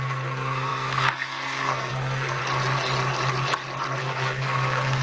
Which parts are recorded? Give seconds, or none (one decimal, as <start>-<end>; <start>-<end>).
2.4-4.0